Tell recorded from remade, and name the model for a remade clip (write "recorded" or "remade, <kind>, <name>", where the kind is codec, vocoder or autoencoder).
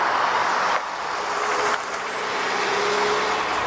recorded